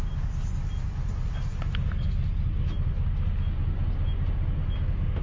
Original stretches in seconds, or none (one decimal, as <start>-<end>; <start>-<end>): 0.0-5.2